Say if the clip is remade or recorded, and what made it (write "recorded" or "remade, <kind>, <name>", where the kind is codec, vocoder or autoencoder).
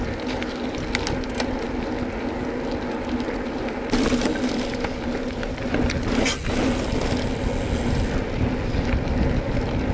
recorded